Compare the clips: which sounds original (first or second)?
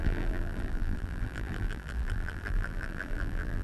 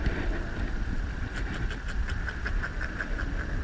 second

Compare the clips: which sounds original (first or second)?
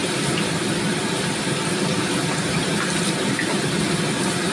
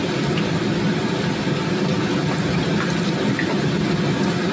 second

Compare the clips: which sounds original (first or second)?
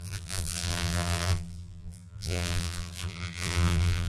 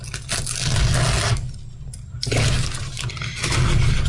second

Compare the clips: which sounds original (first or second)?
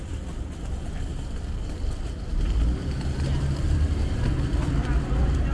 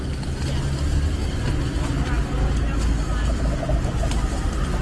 second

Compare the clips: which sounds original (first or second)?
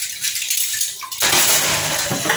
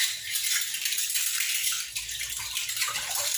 first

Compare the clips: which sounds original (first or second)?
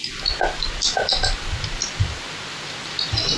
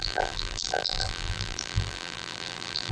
first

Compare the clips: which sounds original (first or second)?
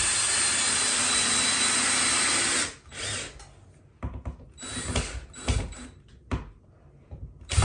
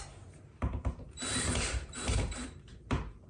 first